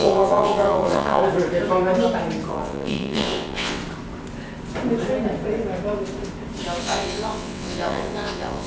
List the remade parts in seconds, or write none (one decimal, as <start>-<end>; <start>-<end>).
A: 0.0-1.2; 2.5-3.8; 6.8-8.7